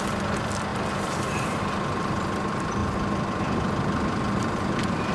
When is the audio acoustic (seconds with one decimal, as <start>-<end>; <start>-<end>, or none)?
0.0-0.7; 1.6-5.1